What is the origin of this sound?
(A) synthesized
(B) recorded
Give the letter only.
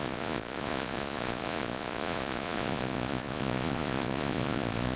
A